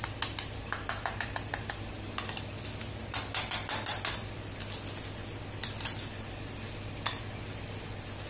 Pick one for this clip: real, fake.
real